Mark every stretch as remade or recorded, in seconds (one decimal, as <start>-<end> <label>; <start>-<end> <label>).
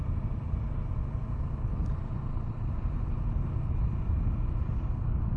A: 0.0-1.8 recorded; 1.8-2.4 remade; 2.4-5.4 recorded